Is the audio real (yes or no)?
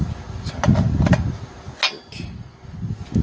yes